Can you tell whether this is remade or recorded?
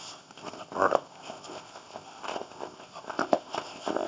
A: remade